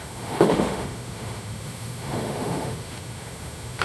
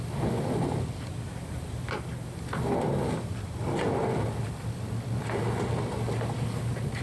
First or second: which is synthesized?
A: first